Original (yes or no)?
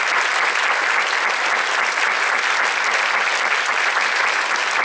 yes